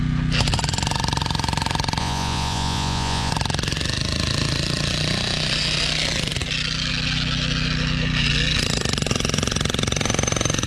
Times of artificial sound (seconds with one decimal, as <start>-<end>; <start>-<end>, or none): 2.0-3.3